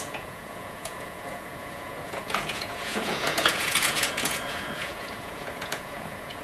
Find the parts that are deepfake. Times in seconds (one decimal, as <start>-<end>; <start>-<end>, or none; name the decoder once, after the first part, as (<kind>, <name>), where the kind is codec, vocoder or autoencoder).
0.0-6.4 (vocoder, Vocos)